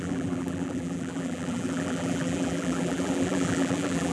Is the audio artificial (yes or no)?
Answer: yes